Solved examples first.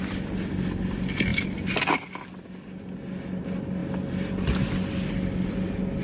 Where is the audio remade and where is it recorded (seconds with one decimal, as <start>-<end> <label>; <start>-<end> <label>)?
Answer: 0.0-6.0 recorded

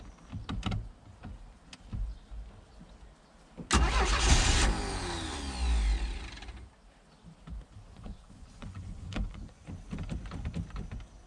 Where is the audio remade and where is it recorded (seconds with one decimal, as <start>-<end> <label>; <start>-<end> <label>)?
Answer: 0.0-7.9 recorded; 7.9-9.7 remade; 9.7-11.3 recorded

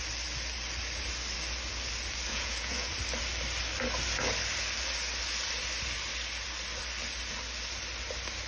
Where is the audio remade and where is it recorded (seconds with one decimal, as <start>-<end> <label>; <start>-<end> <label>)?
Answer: 0.0-2.3 recorded; 2.3-2.9 remade; 2.9-8.5 recorded

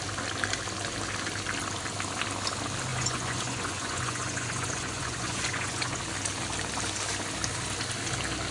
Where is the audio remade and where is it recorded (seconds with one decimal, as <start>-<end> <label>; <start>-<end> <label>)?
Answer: 0.0-2.9 recorded; 2.9-6.0 remade; 6.0-8.5 recorded

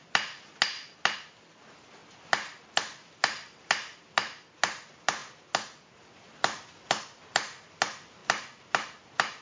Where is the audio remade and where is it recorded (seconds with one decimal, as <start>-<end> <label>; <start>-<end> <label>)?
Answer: 0.0-9.4 recorded

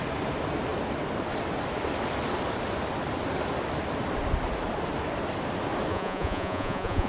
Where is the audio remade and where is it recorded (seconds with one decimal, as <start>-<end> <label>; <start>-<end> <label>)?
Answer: 0.0-5.9 recorded; 5.9-7.1 remade